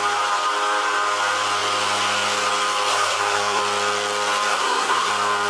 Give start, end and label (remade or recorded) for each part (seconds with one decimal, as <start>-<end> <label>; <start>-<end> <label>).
0.0-2.9 recorded; 2.9-3.6 remade; 3.6-4.5 recorded; 4.5-5.1 remade; 5.1-5.5 recorded